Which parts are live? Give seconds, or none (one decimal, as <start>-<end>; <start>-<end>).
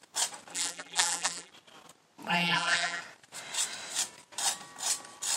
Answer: 0.0-0.5; 1.5-2.3; 3.0-5.4